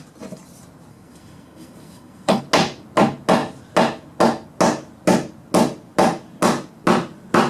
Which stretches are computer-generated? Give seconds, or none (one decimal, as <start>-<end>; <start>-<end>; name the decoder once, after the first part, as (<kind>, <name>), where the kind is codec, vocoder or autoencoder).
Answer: 0.9-2.4 (codec, SNAC)